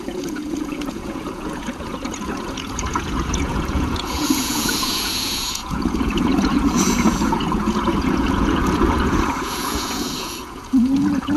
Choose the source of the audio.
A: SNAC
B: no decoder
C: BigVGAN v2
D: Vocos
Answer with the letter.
D